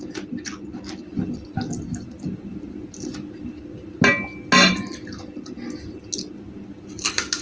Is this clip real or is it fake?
real